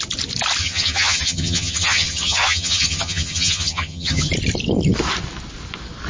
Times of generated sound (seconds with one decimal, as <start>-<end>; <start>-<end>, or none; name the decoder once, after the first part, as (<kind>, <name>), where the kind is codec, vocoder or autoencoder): 0.6-4.3 (vocoder, HiFi-GAN)